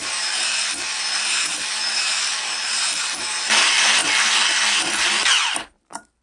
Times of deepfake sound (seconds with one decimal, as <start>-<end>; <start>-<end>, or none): 0.0-6.2